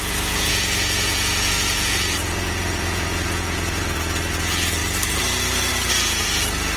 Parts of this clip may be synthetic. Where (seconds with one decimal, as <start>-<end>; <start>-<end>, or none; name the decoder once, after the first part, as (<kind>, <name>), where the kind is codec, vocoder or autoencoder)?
0.0-3.8 (vocoder, Vocos)